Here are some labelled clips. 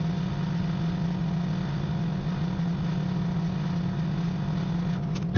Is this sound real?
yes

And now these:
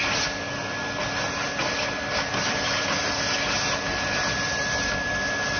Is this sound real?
yes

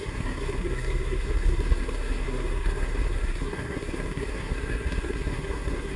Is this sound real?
no